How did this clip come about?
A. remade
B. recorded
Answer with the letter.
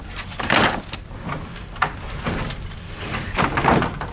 B